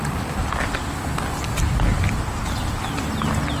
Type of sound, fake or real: real